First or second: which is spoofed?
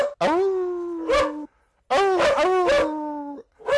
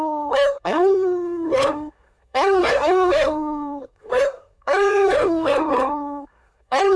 second